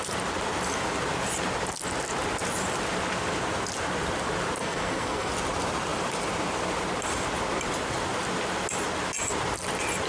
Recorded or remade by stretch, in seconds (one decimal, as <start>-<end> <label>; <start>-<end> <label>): 0.0-4.6 recorded; 4.6-5.3 remade; 5.3-10.1 recorded